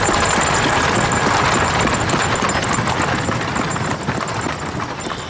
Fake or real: real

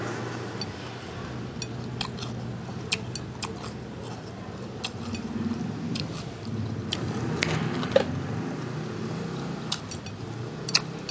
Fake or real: real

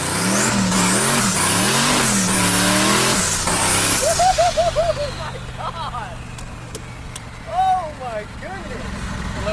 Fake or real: real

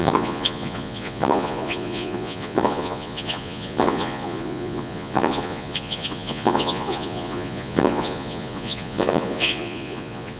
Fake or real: fake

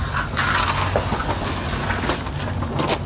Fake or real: real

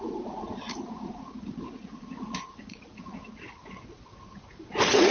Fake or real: fake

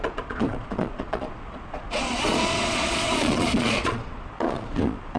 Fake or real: fake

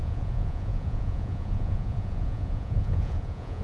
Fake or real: fake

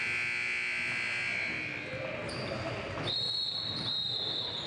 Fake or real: real